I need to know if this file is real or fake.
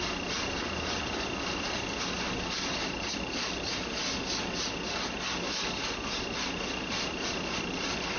real